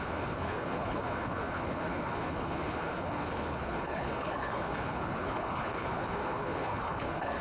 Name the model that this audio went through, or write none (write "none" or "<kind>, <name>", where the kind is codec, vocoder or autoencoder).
codec, HILCodec